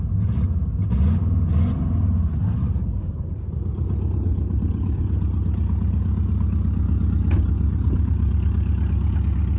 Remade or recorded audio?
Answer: recorded